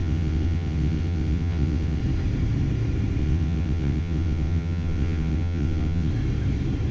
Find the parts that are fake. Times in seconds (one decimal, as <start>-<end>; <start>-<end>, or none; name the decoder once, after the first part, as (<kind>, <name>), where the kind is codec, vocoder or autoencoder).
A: 0.0-2.0 (vocoder, WaveNeXt); 3.2-6.1